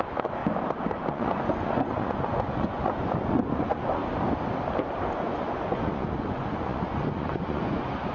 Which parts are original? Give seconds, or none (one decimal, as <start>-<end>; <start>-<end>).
0.4-1.1; 4.0-5.2